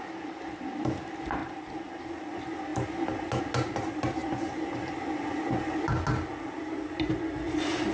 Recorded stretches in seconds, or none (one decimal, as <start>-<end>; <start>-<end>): 0.0-7.9